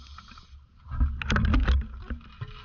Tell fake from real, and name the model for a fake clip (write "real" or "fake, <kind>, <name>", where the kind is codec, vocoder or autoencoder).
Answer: real